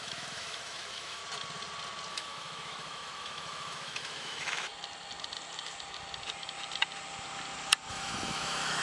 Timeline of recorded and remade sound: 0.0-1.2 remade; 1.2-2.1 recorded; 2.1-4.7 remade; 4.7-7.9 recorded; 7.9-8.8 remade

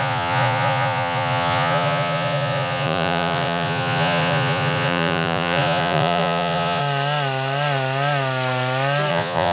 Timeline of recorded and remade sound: 0.0-6.8 remade; 6.8-9.1 recorded; 9.1-9.5 remade

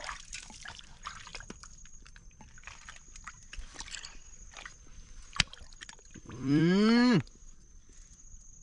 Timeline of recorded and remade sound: 0.0-8.6 remade

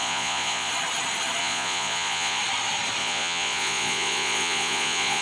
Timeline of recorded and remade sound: 0.0-0.7 remade; 0.7-1.4 recorded; 1.4-2.4 remade; 2.4-3.0 recorded; 3.0-5.2 remade

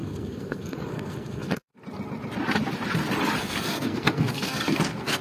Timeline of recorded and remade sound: 0.0-1.7 remade; 1.7-3.4 recorded; 3.4-5.2 remade

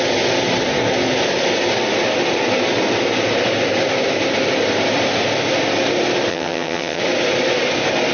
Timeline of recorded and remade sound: 0.0-6.3 recorded; 6.3-7.0 remade; 7.0-8.1 recorded

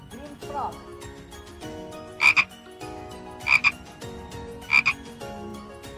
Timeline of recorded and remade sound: 0.0-6.0 recorded

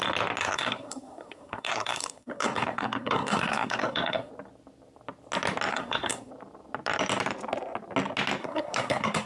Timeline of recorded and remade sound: 0.0-0.4 recorded; 0.4-4.3 remade; 4.3-5.7 recorded; 5.7-6.3 remade; 6.3-8.4 recorded; 8.4-9.3 remade